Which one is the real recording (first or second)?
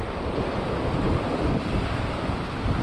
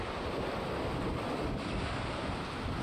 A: second